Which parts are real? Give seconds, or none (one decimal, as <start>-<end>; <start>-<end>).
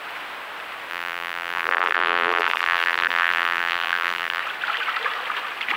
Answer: 0.0-0.9; 4.4-5.8